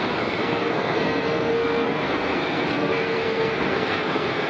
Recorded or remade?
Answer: remade